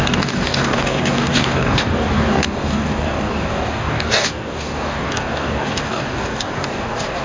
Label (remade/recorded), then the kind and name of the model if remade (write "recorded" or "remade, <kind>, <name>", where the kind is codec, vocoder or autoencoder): remade, codec, DAC